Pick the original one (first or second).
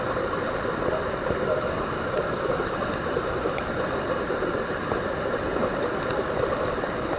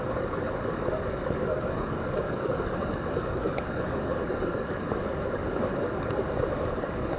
first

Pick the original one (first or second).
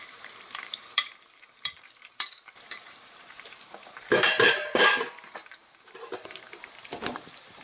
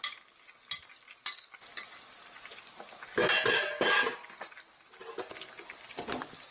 second